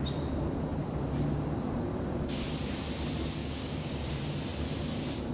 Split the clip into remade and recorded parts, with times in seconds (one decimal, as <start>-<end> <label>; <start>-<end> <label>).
0.0-3.4 recorded; 3.4-4.1 remade; 4.1-5.3 recorded